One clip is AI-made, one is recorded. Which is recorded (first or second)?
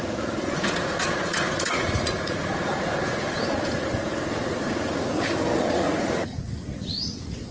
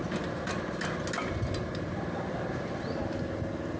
second